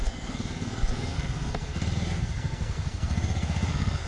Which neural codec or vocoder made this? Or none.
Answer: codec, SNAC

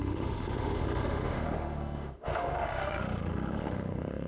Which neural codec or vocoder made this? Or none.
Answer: autoencoder, DAC-VAE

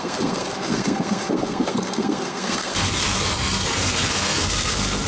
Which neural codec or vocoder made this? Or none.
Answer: codec, SNAC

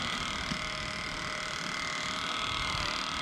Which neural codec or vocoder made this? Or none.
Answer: none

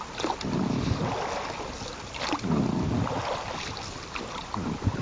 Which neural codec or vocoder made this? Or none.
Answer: none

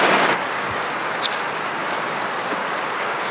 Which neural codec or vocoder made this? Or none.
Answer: codec, DAC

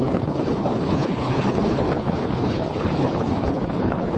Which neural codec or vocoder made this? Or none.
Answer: codec, HILCodec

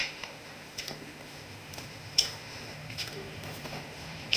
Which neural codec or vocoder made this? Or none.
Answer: autoencoder, DAC-VAE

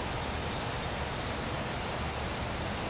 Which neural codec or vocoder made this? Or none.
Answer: none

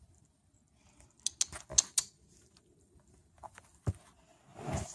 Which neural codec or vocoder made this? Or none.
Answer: none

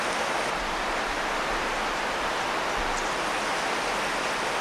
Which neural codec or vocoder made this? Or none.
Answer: none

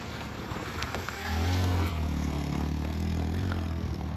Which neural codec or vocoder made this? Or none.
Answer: codec, SNAC